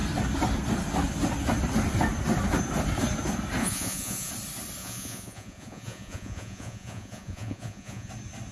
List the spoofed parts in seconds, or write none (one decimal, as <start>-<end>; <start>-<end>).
3.6-4.3; 4.8-8.1